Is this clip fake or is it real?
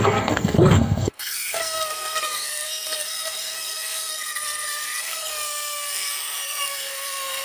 fake